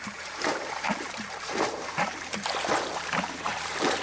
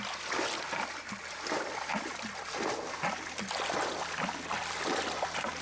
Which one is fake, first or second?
first